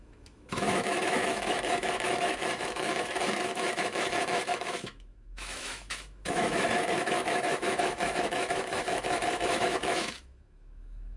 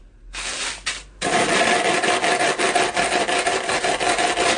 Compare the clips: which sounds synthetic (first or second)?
first